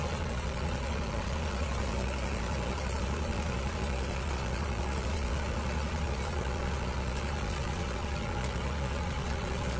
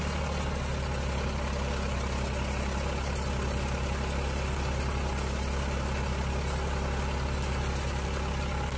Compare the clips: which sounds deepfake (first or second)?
first